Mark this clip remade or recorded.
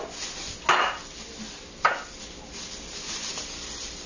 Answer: recorded